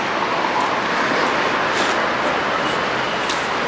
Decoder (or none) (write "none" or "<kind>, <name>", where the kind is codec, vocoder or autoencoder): none